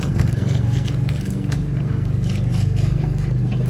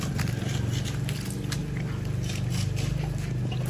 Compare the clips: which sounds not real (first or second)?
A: first